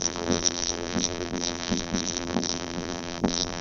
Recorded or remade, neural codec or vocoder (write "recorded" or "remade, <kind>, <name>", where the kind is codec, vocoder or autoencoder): remade, vocoder, BigVGAN v2